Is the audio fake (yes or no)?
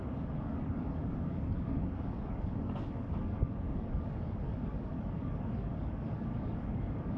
yes